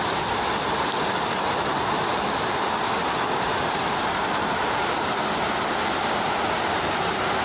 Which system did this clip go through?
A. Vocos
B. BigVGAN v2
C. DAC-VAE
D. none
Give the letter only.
D